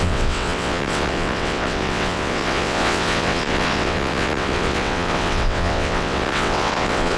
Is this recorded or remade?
remade